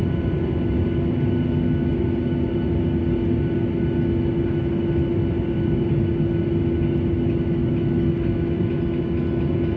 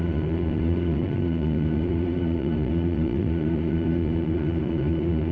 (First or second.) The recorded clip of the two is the first